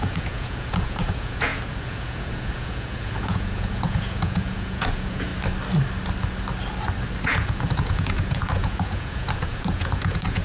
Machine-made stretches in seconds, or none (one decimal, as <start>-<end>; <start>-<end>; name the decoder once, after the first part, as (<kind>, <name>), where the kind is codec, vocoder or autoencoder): 0.0-5.3 (vocoder, Vocos); 7.3-10.4